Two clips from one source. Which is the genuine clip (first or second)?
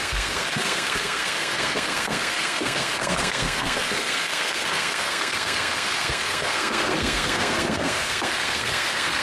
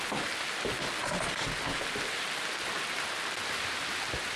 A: second